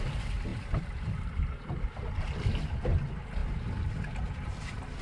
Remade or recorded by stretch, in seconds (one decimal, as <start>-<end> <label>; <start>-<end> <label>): 0.0-0.5 recorded; 0.5-1.9 remade; 1.9-5.0 recorded